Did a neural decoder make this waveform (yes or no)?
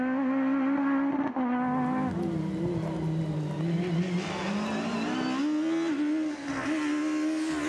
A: no